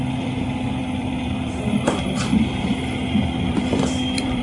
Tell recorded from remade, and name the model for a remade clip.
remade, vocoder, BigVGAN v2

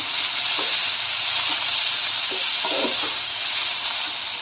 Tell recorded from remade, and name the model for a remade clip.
remade, vocoder, BigVGAN v2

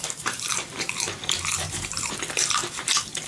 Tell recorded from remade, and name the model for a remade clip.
remade, vocoder, BigVGAN v2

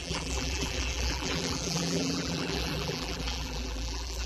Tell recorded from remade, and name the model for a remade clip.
remade, vocoder, BigVGAN v2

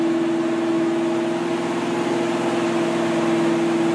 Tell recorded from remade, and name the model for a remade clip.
recorded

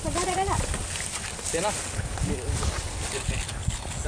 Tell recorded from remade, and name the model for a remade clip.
recorded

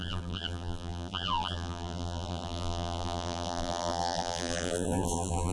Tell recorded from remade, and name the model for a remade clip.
remade, vocoder, BigVGAN v2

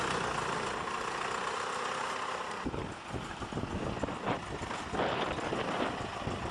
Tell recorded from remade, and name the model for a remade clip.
recorded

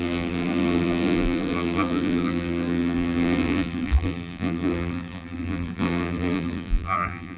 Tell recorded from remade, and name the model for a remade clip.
remade, vocoder, BigVGAN v2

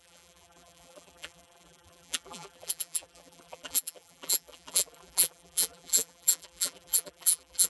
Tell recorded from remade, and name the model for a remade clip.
remade, vocoder, BigVGAN v2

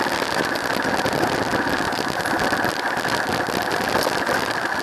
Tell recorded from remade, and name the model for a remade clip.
recorded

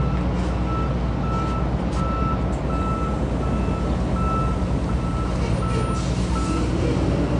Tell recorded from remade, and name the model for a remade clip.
recorded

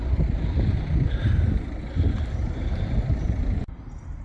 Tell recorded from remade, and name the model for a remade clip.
remade, vocoder, BigVGAN v2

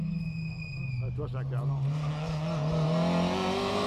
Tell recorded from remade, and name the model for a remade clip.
recorded